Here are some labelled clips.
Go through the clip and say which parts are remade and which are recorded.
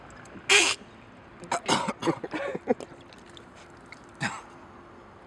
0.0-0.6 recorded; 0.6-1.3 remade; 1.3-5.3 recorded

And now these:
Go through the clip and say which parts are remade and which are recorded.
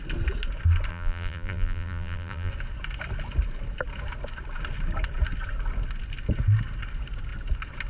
0.0-0.9 recorded; 0.9-2.5 remade; 2.5-7.9 recorded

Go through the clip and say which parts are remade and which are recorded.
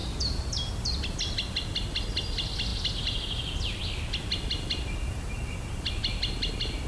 0.0-0.7 remade; 0.7-6.9 recorded